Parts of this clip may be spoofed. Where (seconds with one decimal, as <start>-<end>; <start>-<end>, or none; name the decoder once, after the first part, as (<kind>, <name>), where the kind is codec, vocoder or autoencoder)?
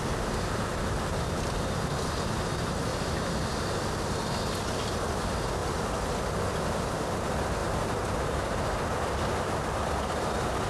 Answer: 0.0-2.9 (vocoder, BigVGAN v2); 5.1-5.6; 7.1-10.7